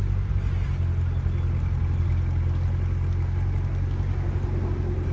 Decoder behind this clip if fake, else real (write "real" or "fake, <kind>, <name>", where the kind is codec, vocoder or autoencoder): real